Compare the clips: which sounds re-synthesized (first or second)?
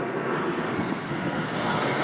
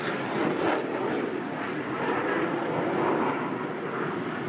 first